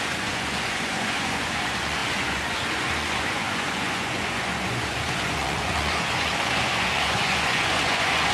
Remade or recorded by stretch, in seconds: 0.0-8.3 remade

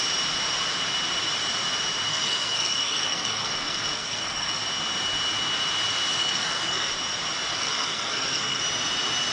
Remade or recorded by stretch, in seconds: 0.0-2.1 recorded; 2.1-4.6 remade; 4.6-6.2 recorded; 6.2-6.9 remade; 6.9-7.5 recorded; 7.5-8.6 remade; 8.6-9.3 recorded

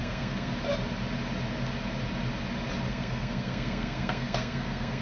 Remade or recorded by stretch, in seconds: 0.0-0.5 remade; 0.5-2.9 recorded; 2.9-5.0 remade

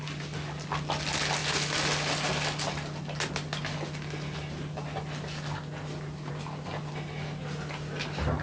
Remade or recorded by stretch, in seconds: 0.0-8.4 recorded

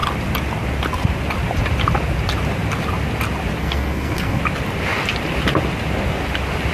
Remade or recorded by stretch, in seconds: 0.0-3.6 recorded; 3.6-4.4 remade; 4.4-6.7 recorded

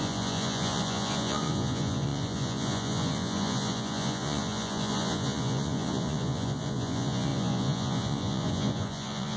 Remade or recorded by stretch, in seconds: 0.0-9.4 remade

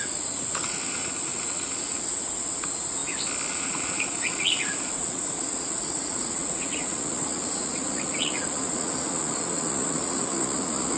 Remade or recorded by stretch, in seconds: 0.0-3.0 remade; 3.0-3.5 recorded; 3.5-11.0 remade

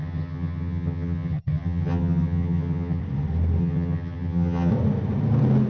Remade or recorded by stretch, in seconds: 0.0-3.0 remade; 3.0-3.6 recorded; 3.6-4.7 remade; 4.7-5.7 recorded